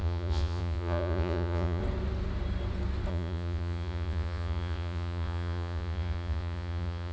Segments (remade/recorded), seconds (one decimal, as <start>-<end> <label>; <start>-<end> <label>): 0.0-1.8 remade; 1.8-3.1 recorded; 3.1-7.1 remade